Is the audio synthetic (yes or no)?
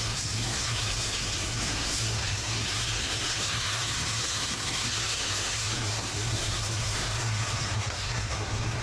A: yes